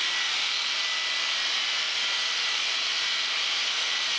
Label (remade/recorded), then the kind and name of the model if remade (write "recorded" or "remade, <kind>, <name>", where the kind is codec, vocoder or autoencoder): recorded